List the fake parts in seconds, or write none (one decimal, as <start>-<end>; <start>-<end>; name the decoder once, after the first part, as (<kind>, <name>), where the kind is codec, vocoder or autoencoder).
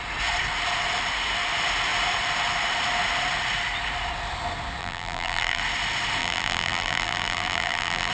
4.8-5.6 (vocoder, BigVGAN v2); 6.2-8.1